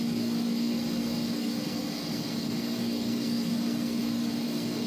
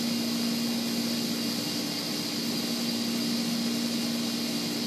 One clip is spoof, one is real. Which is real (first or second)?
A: second